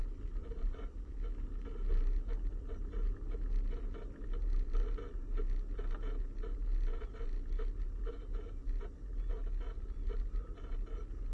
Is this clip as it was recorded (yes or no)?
yes